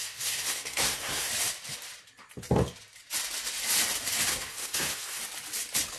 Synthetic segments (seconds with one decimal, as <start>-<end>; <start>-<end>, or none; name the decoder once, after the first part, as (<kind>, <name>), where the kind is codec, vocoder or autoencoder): 0.0-1.3 (codec, SNAC); 4.3-5.2